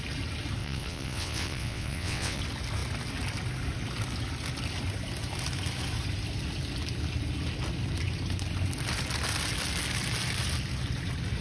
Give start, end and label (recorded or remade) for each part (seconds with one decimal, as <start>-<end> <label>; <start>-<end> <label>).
0.0-0.6 recorded; 0.6-2.4 remade; 2.4-11.4 recorded